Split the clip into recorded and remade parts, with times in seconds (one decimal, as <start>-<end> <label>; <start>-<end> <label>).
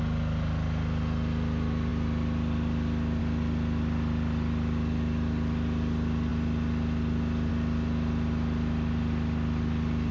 0.0-10.1 recorded